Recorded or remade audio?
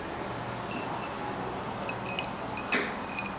recorded